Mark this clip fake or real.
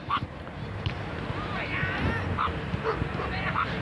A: fake